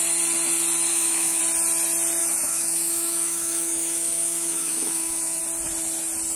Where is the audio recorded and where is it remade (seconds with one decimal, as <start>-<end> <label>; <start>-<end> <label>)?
0.0-0.9 recorded; 0.9-1.4 remade; 1.4-2.2 recorded; 2.2-5.4 remade; 5.4-6.3 recorded